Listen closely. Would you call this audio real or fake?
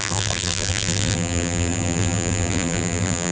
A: fake